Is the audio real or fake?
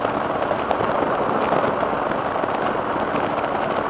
real